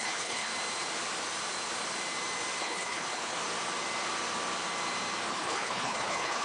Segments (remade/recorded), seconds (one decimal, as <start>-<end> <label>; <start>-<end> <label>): 0.0-0.5 remade; 0.5-2.6 recorded; 2.6-3.4 remade; 3.4-5.3 recorded; 5.3-6.4 remade